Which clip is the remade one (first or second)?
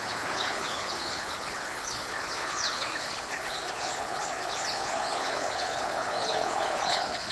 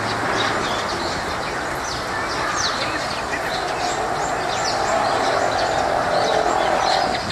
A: first